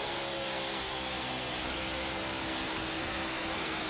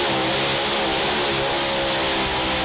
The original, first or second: second